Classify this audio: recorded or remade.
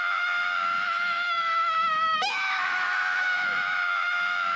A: remade